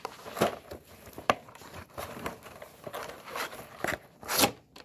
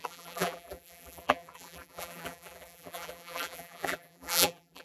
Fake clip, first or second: second